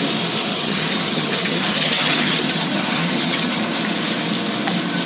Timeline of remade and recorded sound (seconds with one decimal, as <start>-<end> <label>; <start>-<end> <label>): 0.0-0.5 recorded; 0.5-3.6 remade; 3.6-5.1 recorded